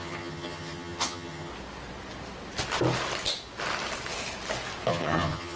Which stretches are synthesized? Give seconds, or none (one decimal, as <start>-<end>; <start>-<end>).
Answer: 0.0-1.5; 4.9-5.6